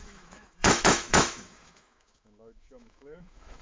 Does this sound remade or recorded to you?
remade